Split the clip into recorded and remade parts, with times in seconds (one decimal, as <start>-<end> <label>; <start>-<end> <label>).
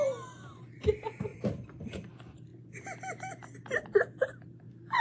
0.0-1.3 recorded; 1.3-2.1 remade; 2.1-5.0 recorded